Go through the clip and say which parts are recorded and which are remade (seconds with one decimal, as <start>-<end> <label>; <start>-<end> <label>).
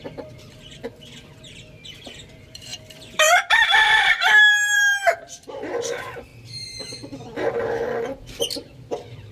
0.0-6.3 remade; 6.3-8.2 recorded; 8.2-9.3 remade